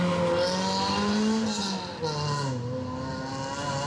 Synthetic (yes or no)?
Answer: no